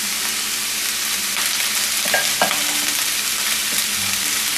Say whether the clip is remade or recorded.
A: recorded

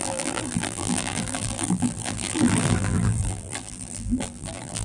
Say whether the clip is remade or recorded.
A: remade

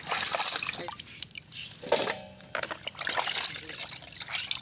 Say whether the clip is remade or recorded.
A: recorded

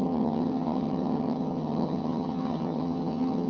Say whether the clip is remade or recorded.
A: remade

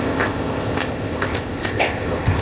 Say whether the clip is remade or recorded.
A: remade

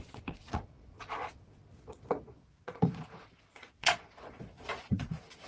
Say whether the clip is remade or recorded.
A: remade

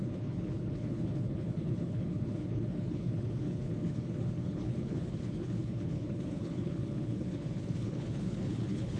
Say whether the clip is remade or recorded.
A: remade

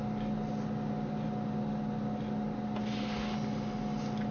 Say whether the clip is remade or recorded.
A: recorded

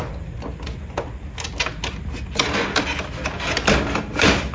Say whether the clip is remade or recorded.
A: recorded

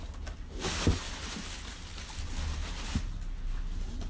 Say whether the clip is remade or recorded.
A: recorded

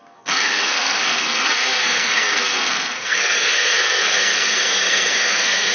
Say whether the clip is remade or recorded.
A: remade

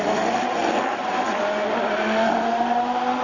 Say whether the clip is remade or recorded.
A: recorded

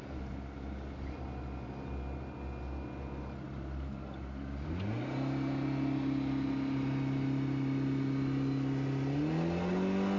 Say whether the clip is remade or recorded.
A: recorded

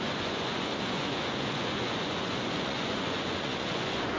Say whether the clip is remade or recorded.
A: remade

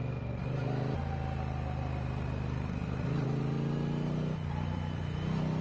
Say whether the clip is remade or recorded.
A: recorded